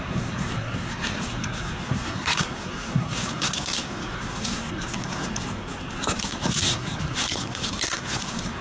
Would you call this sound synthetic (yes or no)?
yes